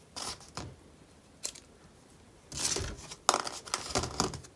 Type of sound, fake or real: real